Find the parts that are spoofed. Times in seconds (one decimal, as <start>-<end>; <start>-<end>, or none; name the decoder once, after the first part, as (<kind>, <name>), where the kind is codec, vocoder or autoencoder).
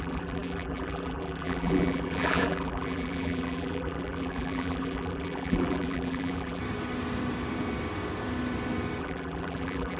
0.0-6.6 (vocoder, BigVGAN v2); 9.0-10.0